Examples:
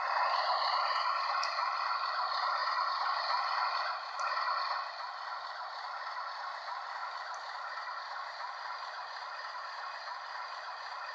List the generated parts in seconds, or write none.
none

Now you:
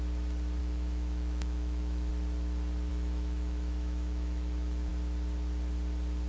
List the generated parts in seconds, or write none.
0.6-2.1 (autoencoder, DAC-VAE); 2.9-4.9